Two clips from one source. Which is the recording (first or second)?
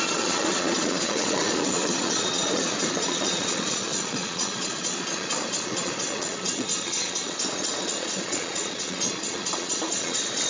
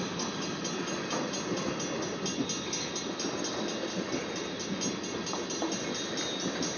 second